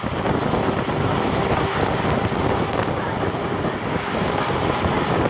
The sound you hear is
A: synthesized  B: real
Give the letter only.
B